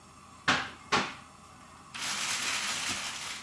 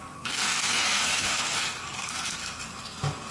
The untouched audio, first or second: first